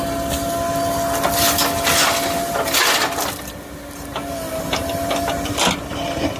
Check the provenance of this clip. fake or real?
real